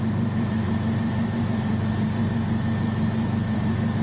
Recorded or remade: remade